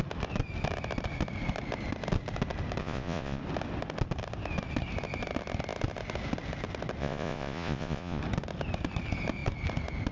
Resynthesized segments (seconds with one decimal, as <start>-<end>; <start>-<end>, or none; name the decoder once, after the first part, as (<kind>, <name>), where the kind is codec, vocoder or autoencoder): 2.8-3.4 (vocoder, Vocos); 7.0-8.2